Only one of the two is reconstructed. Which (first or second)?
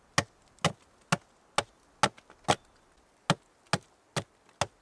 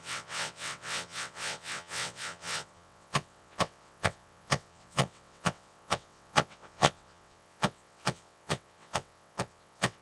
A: second